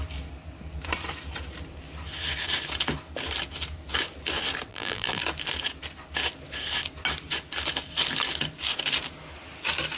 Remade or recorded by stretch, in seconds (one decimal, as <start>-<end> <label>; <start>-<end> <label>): 0.0-4.7 recorded; 4.7-5.2 remade; 5.2-10.0 recorded